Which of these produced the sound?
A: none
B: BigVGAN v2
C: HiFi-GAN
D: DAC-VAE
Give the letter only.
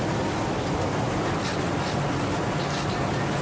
A